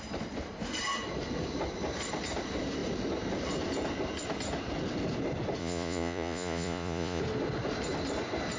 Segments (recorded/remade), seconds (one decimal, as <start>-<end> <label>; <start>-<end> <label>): 0.0-5.6 recorded; 5.6-7.2 remade; 7.2-8.6 recorded